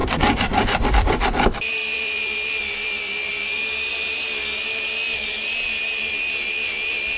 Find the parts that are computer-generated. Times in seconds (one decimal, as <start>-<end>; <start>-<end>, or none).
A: 0.8-7.2